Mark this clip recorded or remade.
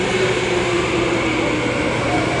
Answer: recorded